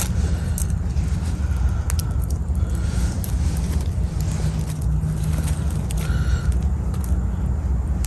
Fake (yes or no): no